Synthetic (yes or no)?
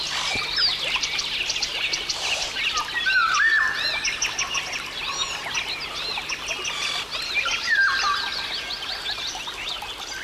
no